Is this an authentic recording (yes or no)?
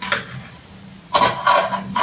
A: yes